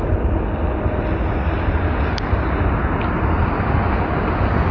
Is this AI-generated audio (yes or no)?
no